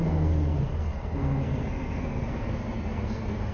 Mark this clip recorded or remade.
remade